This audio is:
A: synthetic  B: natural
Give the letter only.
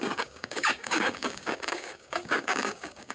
A